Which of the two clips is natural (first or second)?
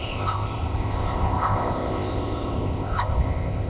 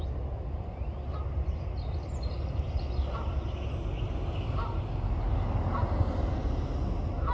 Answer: second